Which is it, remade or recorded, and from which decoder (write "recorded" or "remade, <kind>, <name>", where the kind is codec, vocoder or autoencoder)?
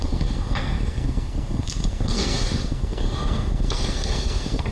remade, codec, SNAC